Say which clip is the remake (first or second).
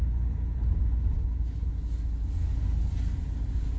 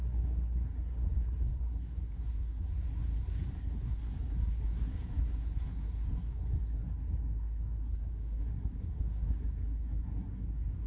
second